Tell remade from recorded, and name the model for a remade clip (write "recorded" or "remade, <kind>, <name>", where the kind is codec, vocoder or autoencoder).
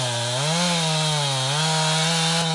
recorded